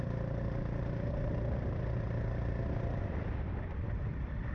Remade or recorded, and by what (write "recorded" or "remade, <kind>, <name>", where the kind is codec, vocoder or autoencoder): recorded